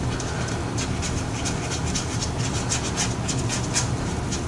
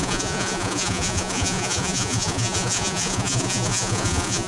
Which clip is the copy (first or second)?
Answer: second